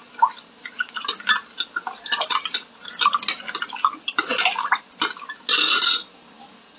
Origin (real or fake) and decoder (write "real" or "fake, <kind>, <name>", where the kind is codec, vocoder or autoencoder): real